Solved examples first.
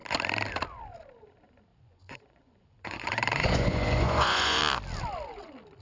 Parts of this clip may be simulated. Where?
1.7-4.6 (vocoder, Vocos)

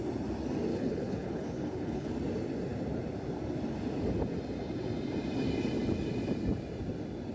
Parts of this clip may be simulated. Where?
0.7-2.1 (codec, HILCodec)

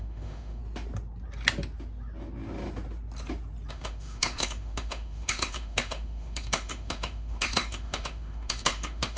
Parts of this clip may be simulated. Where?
0.0-0.6 (autoencoder, DAC-VAE); 3.7-9.2

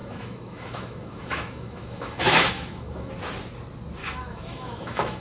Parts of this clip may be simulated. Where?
0.0-3.1 (autoencoder, DAC-VAE); 4.0-5.2